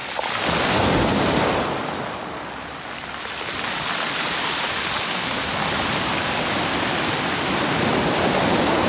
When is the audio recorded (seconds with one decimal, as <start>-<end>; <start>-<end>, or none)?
0.0-8.9